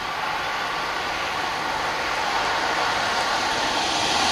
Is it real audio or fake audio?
real